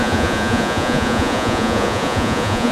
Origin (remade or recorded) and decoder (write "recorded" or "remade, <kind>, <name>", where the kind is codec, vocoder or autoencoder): remade, vocoder, Vocos